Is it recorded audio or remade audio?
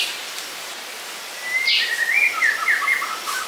recorded